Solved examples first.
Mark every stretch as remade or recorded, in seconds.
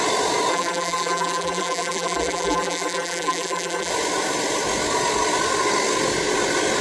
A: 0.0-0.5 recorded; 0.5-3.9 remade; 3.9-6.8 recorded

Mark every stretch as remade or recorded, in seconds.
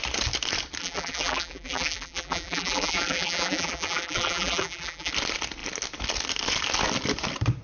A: 0.0-0.8 recorded; 0.8-5.1 remade; 5.1-7.6 recorded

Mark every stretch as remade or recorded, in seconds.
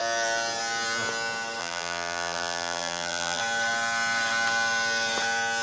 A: 0.0-1.6 recorded; 1.6-3.4 remade; 3.4-5.6 recorded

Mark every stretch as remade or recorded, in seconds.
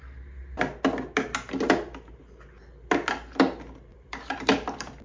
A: 0.0-3.9 recorded; 3.9-5.0 remade